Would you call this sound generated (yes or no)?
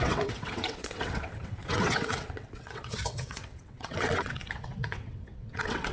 yes